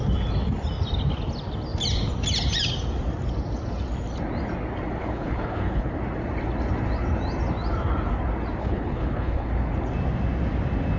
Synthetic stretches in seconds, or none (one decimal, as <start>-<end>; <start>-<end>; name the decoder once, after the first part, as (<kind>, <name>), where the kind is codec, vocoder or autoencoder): 5.0-5.9 (codec, HILCodec); 8.6-9.5